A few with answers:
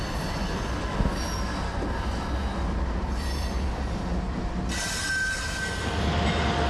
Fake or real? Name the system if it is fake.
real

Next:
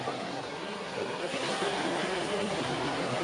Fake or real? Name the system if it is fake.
fake, codec, SNAC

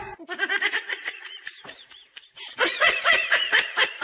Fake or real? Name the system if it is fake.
fake, vocoder, Vocos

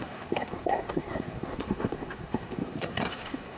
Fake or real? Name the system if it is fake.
fake, codec, SNAC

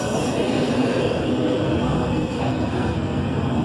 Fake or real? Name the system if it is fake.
fake, codec, SNAC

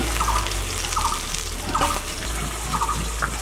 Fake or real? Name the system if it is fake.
real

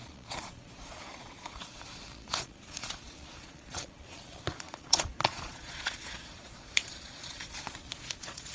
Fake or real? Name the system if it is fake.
fake, vocoder, Vocos